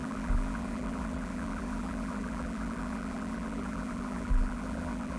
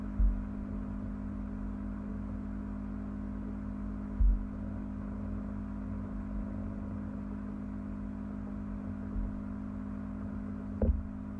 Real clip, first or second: second